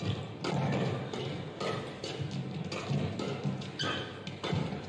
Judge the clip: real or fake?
real